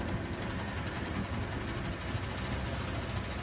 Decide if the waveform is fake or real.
real